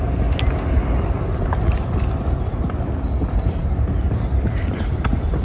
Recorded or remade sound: recorded